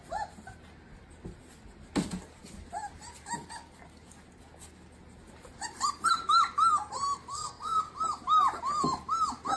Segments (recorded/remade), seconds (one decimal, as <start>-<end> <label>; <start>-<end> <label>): 0.0-7.3 recorded; 7.3-7.8 remade; 7.8-9.6 recorded